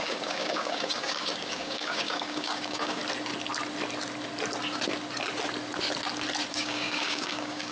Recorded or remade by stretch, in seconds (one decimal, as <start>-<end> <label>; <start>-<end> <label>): 0.0-3.0 remade; 3.0-6.5 recorded; 6.5-7.7 remade